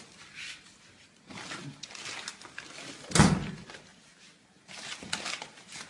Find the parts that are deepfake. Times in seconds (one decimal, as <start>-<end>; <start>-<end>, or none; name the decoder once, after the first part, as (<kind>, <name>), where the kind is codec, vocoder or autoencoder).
none